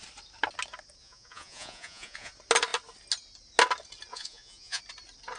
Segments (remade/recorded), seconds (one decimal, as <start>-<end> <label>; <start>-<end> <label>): 0.0-1.0 recorded; 1.0-2.3 remade; 2.3-4.1 recorded; 4.1-4.8 remade; 4.8-5.4 recorded